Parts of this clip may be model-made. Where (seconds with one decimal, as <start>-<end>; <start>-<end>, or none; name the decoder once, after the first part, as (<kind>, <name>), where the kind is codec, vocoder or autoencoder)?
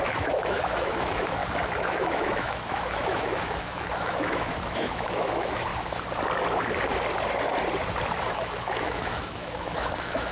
0.0-1.4 (autoencoder, DAC-VAE); 1.9-5.7; 8.2-10.3